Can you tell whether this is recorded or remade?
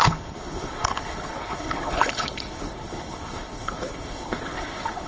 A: remade